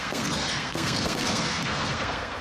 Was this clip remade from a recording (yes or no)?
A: yes